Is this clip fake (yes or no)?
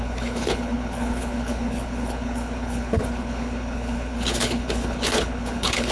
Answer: yes